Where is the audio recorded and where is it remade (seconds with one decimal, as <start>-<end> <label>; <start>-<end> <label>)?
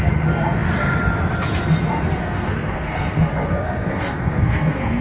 0.0-2.2 recorded; 2.2-5.0 remade